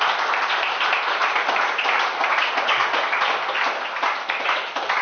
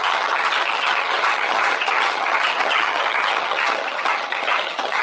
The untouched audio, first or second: first